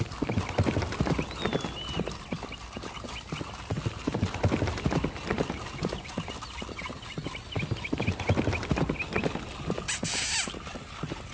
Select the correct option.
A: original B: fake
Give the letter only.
A